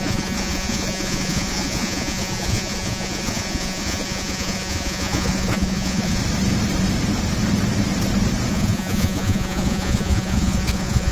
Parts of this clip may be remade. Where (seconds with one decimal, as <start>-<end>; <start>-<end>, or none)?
0.0-6.2; 8.5-11.1